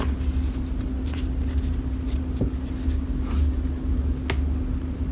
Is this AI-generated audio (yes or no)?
no